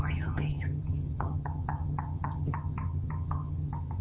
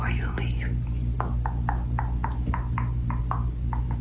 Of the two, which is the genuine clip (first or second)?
second